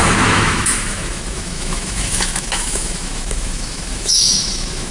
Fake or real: fake